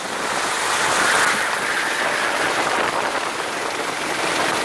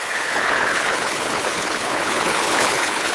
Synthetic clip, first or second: second